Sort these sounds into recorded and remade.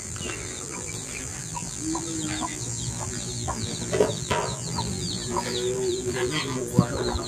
remade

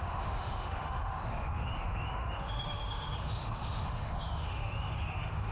remade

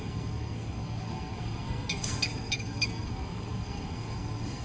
remade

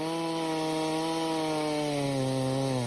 recorded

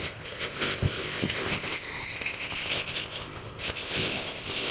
remade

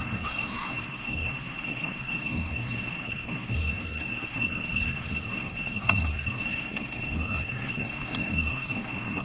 remade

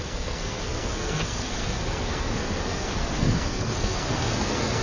remade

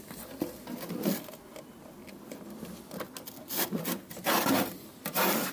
recorded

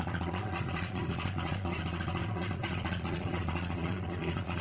remade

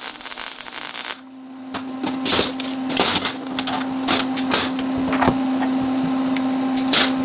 recorded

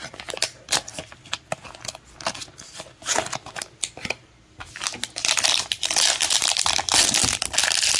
recorded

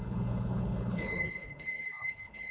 remade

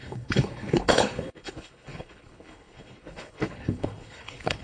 remade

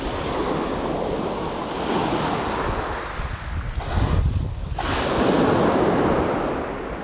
recorded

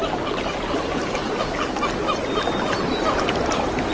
recorded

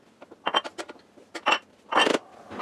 recorded